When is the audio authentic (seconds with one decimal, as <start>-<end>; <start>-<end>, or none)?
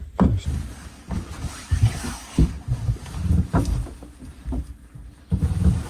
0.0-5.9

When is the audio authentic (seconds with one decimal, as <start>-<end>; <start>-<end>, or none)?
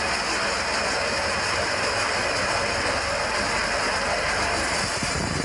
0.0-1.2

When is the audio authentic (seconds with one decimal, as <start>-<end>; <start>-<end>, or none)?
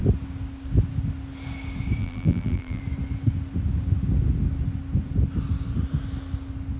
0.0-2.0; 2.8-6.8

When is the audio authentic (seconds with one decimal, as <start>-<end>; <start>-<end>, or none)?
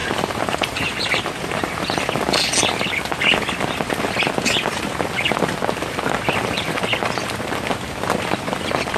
1.8-9.0